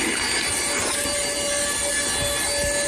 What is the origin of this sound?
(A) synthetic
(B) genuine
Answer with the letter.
B